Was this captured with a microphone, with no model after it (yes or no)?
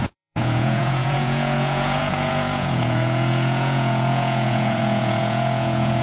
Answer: no